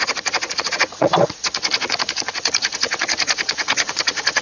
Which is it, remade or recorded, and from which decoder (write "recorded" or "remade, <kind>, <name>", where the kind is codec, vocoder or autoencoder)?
remade, vocoder, Vocos